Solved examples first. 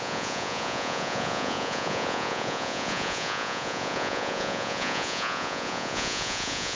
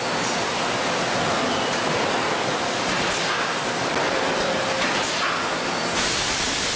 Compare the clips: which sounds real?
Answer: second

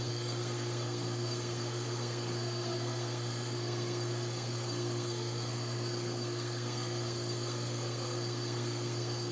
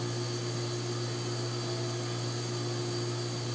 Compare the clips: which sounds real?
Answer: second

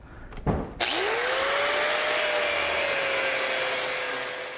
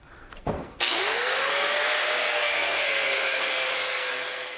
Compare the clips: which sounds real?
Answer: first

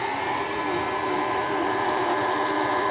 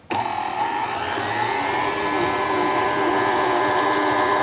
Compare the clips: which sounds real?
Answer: second